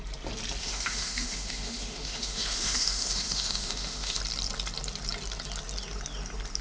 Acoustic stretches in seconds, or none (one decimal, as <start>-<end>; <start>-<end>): 0.0-0.6; 4.2-6.6

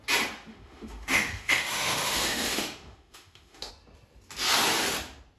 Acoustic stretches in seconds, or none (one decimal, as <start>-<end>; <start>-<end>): 0.0-0.5; 3.7-5.4

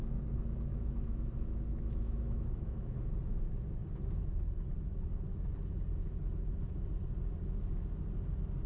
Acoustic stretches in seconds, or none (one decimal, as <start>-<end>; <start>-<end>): 0.0-0.7; 3.4-8.7

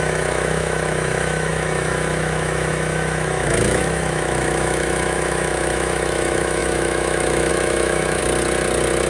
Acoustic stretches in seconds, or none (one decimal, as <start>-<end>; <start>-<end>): 8.2-9.1

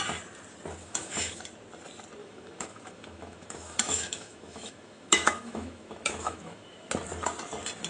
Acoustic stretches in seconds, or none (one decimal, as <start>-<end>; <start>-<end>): 0.0-0.8; 1.4-2.2; 6.9-7.9

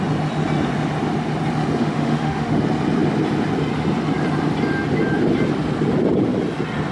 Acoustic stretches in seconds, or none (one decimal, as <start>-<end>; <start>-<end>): 0.0-1.8; 2.6-6.9